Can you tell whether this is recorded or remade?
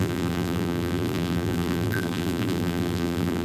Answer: remade